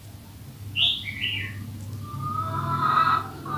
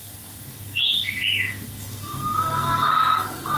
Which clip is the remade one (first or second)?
second